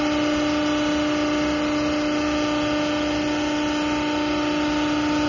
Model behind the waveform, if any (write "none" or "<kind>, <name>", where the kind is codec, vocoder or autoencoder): none